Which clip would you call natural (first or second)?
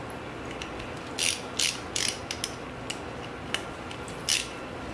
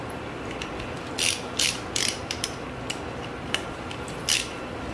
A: first